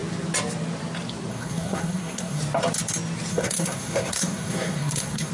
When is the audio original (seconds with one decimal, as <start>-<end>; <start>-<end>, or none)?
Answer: 0.0-1.3; 2.4-3.3